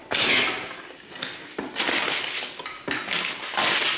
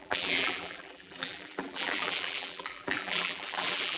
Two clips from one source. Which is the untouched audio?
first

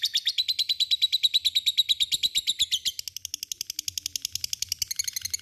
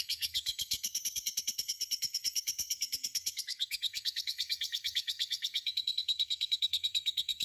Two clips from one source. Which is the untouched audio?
first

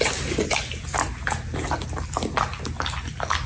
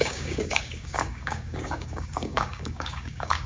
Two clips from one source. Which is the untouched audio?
first